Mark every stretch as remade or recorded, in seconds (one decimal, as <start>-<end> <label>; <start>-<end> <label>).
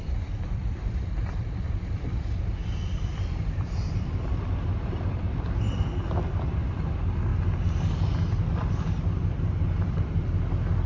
0.0-7.3 remade; 7.3-8.5 recorded; 8.5-10.9 remade